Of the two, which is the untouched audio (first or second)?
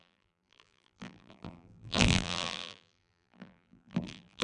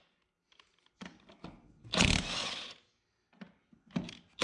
second